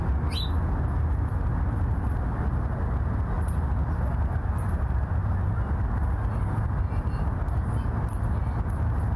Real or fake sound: real